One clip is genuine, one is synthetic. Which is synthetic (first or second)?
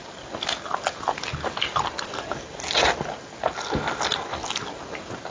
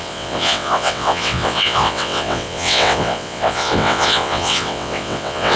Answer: second